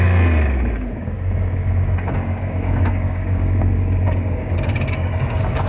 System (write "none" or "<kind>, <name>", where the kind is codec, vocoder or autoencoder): codec, DAC